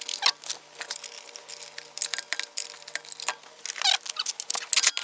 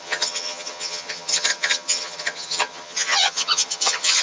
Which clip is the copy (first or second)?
second